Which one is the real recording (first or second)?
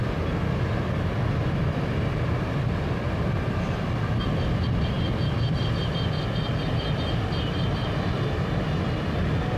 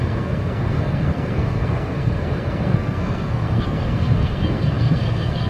first